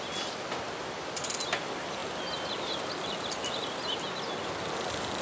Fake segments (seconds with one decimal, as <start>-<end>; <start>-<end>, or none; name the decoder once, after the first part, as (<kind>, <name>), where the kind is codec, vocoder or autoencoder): none